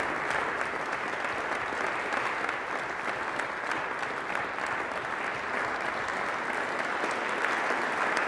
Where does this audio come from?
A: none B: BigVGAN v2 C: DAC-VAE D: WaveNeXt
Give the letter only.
A